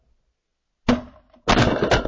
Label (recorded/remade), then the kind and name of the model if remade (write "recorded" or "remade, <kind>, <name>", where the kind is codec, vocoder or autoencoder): recorded